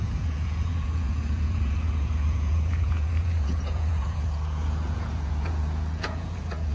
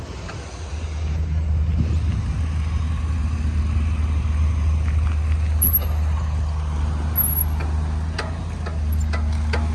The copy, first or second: first